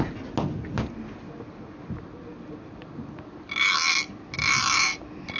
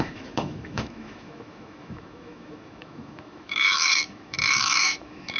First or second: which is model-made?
second